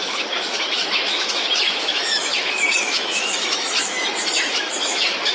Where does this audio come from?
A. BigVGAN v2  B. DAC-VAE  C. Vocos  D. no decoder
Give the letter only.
B